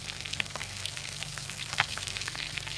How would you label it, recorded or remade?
remade